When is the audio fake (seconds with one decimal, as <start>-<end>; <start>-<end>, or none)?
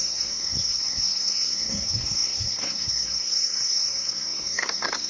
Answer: 0.0-5.1